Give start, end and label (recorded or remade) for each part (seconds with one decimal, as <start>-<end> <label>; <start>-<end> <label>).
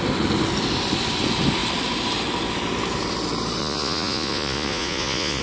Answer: 0.0-3.6 recorded; 3.6-5.4 remade